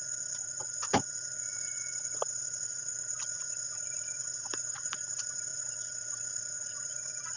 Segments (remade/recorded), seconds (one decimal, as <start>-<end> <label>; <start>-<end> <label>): 0.0-7.4 recorded